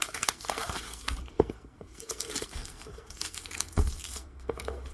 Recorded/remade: remade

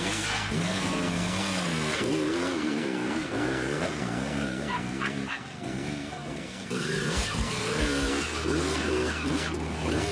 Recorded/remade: remade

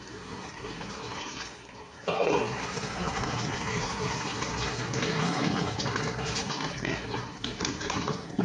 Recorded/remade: remade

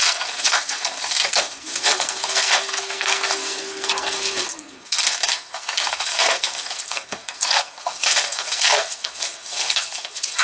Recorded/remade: remade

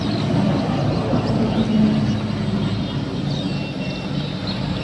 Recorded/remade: recorded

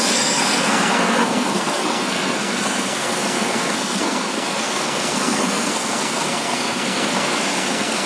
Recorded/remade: remade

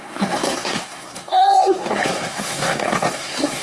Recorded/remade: remade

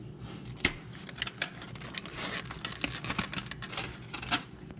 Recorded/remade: recorded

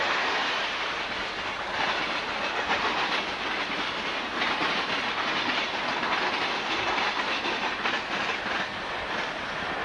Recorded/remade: recorded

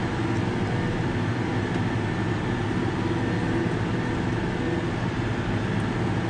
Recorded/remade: recorded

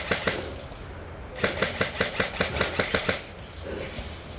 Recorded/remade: recorded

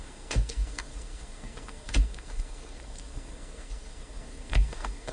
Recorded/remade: remade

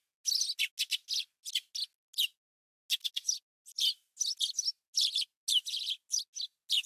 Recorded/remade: recorded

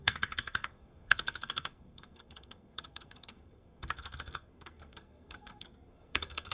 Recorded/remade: remade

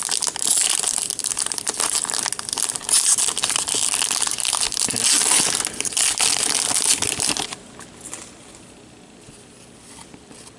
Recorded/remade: recorded